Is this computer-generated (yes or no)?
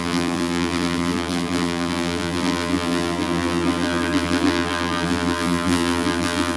yes